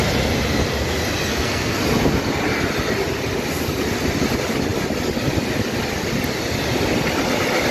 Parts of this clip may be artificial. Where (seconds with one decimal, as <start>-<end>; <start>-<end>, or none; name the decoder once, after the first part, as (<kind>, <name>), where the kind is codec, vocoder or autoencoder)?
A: 1.3-1.8 (codec, SNAC)